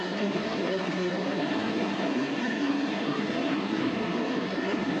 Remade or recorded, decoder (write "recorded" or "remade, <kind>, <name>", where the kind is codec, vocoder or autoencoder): remade, codec, SNAC